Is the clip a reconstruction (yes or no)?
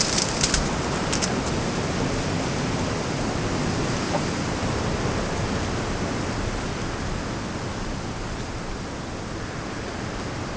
no